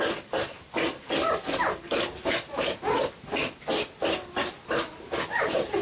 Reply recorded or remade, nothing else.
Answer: recorded